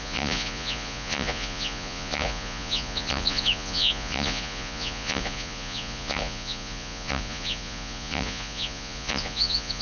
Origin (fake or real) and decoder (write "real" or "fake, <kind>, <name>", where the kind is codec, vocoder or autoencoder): fake, vocoder, Vocos